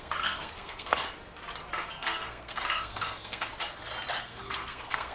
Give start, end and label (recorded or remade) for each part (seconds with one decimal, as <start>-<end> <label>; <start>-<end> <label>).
0.0-1.0 remade; 1.0-1.9 recorded; 1.9-3.5 remade; 3.5-4.2 recorded; 4.2-5.1 remade